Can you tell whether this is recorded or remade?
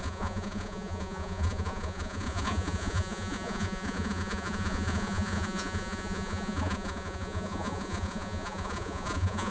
remade